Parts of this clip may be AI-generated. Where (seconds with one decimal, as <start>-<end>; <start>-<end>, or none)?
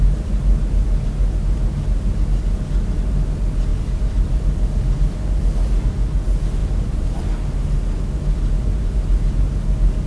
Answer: 3.7-4.6; 6.6-7.2